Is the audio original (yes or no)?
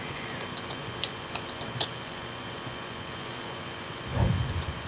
no